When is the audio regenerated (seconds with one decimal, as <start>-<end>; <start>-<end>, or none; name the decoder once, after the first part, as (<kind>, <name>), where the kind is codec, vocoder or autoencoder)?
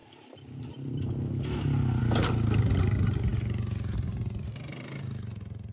0.0-2.0 (vocoder, BigVGAN v2)